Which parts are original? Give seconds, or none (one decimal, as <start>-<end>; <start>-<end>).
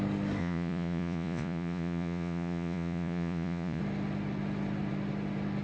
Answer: 0.0-0.4; 3.8-5.6